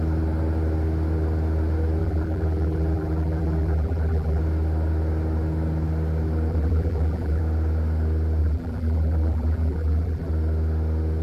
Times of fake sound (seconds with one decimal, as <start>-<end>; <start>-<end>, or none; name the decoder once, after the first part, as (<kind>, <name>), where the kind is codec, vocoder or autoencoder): 2.0-4.4 (vocoder, BigVGAN v2); 6.5-7.4; 8.4-10.3